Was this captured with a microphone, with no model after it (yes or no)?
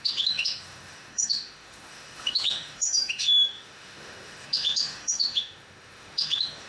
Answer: no